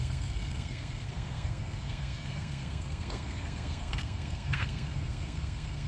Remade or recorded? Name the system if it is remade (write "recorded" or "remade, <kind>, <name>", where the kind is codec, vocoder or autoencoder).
remade, codec, SNAC